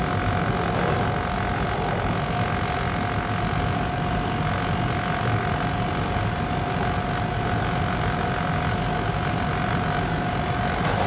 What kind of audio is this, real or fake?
real